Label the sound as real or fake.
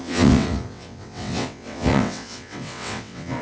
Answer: fake